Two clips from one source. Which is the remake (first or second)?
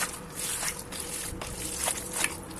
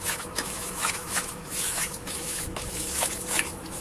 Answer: second